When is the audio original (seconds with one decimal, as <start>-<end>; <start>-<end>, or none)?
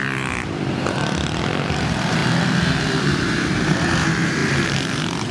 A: 2.2-3.0